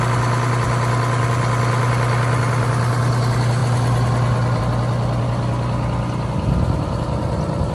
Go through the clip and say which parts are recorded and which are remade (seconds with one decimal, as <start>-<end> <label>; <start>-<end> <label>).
0.0-7.7 recorded

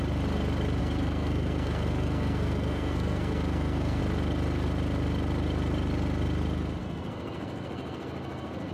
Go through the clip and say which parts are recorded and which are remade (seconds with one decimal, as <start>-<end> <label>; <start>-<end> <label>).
0.0-0.8 recorded; 0.8-4.0 remade; 4.0-6.8 recorded; 6.8-8.7 remade

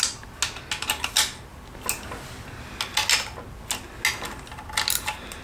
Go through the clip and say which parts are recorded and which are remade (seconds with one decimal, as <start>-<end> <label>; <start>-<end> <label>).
0.0-5.4 recorded

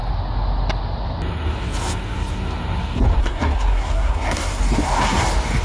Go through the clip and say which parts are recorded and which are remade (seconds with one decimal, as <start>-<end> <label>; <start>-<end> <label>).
0.0-3.2 recorded; 3.2-4.6 remade; 4.6-5.6 recorded

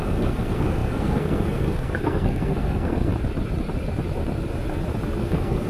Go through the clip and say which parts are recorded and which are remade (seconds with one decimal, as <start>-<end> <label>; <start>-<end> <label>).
0.0-3.1 remade; 3.1-5.2 recorded; 5.2-5.7 remade

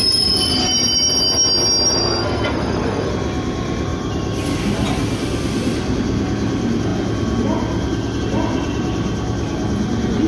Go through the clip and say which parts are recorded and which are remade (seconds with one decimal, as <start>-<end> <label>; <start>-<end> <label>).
0.0-2.0 recorded; 2.0-3.1 remade; 3.1-10.3 recorded

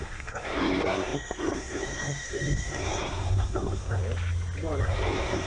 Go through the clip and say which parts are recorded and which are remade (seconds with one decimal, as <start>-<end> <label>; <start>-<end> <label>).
0.0-4.0 remade; 4.0-4.8 recorded; 4.8-5.5 remade